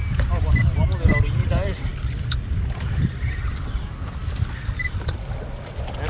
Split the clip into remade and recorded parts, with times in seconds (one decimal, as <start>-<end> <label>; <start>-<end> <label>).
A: 0.0-6.1 recorded